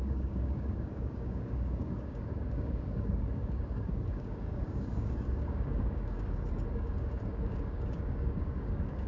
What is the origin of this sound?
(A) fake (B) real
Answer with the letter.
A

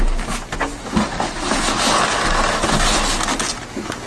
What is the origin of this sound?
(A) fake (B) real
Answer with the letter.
B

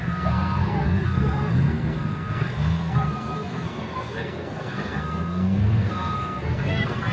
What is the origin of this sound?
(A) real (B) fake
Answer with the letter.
B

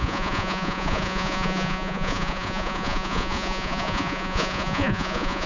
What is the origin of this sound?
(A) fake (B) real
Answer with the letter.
A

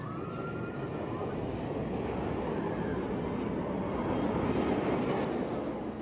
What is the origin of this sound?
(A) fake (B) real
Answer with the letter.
B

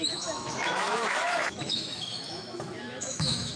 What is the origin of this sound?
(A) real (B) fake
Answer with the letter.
B